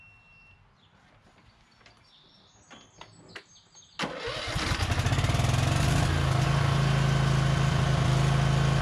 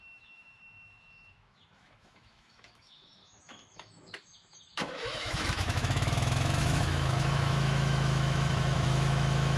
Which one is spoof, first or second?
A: second